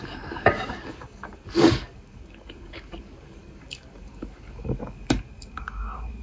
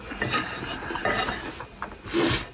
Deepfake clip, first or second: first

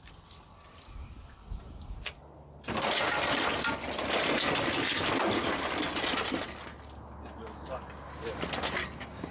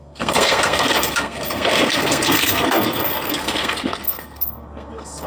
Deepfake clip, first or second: second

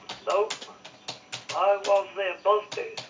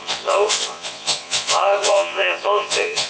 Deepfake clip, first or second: second